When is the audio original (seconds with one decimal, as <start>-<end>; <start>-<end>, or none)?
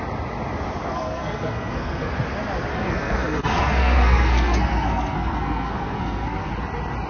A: 0.0-0.9; 2.1-2.7; 6.5-7.1